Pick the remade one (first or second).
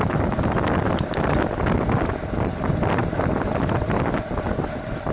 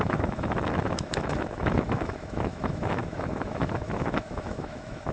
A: second